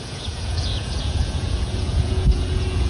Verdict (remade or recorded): remade